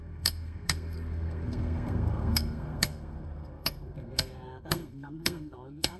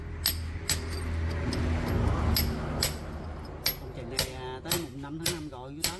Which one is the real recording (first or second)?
second